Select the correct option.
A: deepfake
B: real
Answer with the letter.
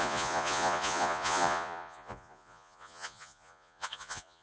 A